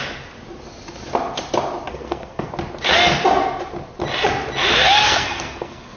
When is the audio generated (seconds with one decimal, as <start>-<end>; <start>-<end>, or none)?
1.9-2.5; 5.0-6.0